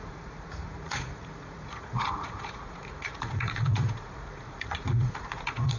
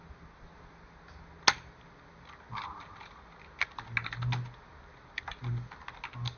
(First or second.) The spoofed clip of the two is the first